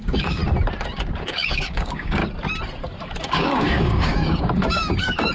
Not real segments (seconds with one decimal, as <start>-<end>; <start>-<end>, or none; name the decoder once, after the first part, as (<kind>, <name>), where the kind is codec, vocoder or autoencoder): 0.0-0.4 (codec, DAC); 1.2-2.2; 3.2-5.3